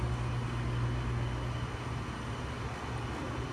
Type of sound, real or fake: real